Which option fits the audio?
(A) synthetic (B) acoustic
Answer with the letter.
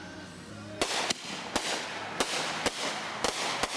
B